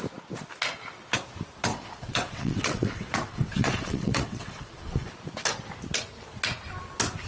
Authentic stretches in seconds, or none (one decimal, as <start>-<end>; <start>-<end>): 0.0-1.7; 5.1-7.3